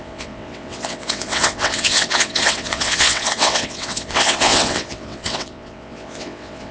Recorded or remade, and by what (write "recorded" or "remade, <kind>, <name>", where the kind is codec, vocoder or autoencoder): remade, vocoder, WaveNeXt